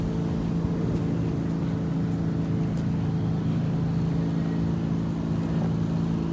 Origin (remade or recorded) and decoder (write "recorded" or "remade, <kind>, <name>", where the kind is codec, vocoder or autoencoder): recorded